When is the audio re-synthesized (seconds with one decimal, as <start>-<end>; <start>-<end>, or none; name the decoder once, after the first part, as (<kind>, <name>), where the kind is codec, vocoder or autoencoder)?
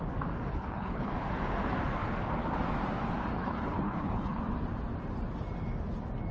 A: 0.5-1.1 (codec, HILCodec); 3.3-4.4